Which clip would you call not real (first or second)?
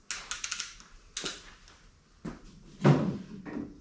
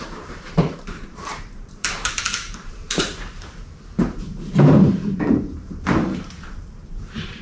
second